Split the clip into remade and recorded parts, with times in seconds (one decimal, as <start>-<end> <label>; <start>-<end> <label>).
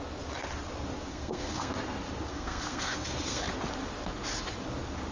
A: 0.0-1.1 recorded; 1.1-1.7 remade; 1.7-2.3 recorded; 2.3-3.4 remade; 3.4-5.1 recorded